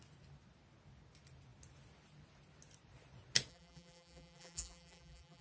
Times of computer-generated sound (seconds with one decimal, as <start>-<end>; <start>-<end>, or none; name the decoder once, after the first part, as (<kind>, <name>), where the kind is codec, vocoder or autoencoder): 3.5-5.4 (vocoder, BigVGAN v2)